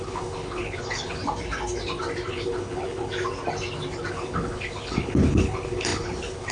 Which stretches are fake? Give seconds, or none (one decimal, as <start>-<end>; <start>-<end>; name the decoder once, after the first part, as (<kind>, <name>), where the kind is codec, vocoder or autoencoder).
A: 0.0-1.2 (codec, HILCodec); 2.3-3.1; 4.1-6.5